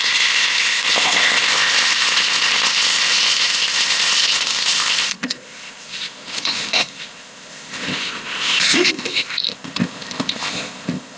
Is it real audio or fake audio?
fake